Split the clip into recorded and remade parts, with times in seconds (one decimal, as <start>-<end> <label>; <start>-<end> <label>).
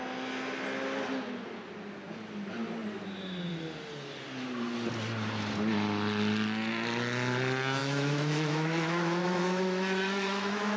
0.0-7.8 recorded; 7.8-10.8 remade